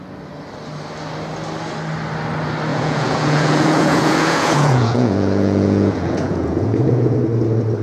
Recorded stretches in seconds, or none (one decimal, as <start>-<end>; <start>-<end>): 0.0-2.7; 7.2-7.8